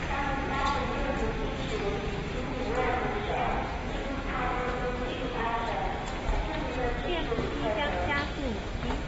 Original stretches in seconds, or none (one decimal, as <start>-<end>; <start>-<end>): 0.0-4.0; 5.4-9.1